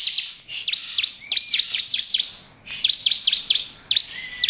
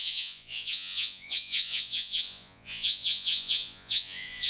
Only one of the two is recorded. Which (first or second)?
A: first